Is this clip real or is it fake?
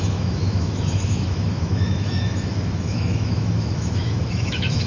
fake